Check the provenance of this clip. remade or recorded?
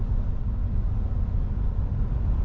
recorded